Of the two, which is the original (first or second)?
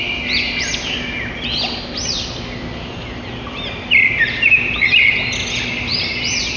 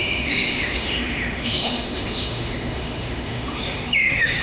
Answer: first